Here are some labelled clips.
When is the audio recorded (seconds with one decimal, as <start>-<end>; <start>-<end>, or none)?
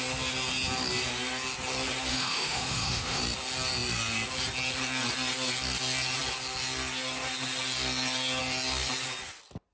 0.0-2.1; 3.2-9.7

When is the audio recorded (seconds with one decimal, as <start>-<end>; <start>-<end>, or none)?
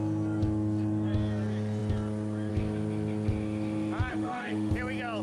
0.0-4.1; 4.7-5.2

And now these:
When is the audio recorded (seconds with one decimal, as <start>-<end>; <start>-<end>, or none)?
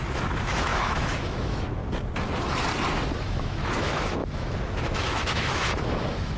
1.8-3.2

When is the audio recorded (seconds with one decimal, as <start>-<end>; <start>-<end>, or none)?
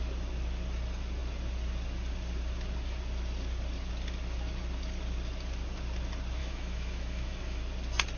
0.0-6.4; 7.6-8.2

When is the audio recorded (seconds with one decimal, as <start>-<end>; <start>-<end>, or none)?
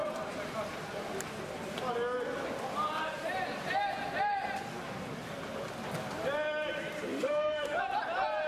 0.0-7.1; 7.8-8.5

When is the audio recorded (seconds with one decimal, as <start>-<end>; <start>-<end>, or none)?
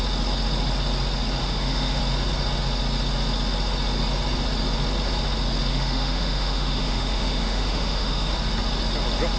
0.0-1.4; 2.0-5.7; 8.3-9.4